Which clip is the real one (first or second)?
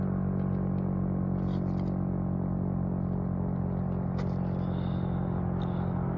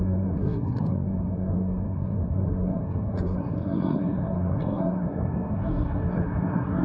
first